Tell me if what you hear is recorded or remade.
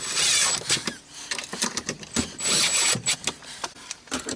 recorded